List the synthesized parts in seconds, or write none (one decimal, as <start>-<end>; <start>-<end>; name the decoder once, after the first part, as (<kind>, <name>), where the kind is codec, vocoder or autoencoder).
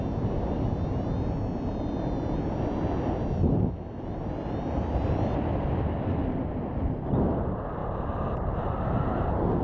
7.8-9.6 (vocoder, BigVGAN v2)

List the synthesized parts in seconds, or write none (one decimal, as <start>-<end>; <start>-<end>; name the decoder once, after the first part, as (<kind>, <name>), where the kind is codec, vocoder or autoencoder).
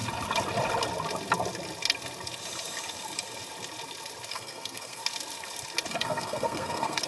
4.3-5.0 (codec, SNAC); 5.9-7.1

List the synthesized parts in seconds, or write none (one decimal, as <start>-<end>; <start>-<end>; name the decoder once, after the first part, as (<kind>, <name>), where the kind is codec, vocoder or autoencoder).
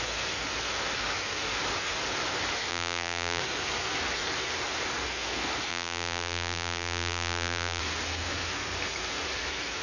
2.7-3.4 (vocoder, BigVGAN v2); 5.7-7.8